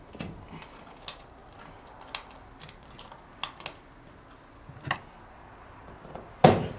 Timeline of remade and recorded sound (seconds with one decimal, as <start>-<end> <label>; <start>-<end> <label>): 0.0-6.8 recorded